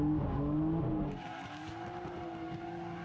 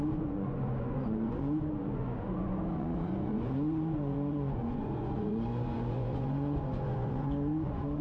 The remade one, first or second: second